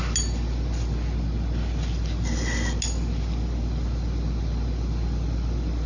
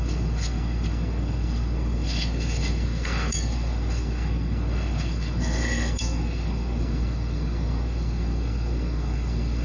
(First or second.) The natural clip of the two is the first